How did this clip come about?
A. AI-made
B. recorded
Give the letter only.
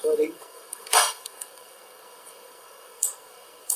A